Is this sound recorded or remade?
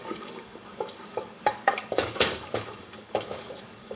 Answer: remade